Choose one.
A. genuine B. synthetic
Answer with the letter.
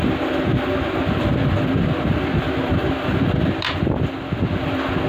B